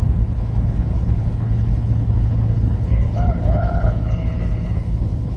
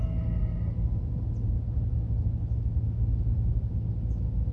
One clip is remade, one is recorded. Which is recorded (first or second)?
second